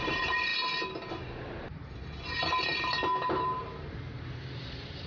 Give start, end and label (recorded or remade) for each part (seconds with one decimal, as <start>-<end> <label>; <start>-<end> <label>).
0.0-0.5 remade; 0.5-1.1 recorded; 1.1-5.1 remade